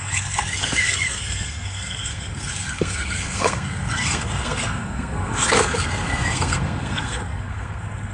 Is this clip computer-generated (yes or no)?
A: yes